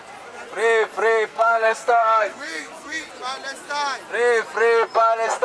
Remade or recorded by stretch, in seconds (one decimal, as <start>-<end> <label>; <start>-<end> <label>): 0.0-1.3 recorded; 1.3-3.1 remade; 3.1-5.4 recorded